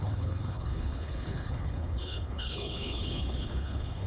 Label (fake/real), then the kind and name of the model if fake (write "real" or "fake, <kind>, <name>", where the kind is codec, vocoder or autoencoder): fake, codec, HILCodec